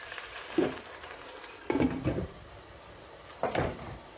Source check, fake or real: fake